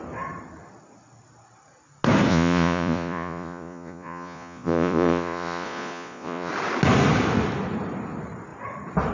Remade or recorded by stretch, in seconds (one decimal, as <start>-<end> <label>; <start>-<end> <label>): 0.0-2.3 recorded; 2.3-6.5 remade; 6.5-9.1 recorded